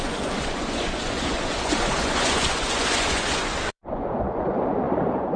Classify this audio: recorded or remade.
remade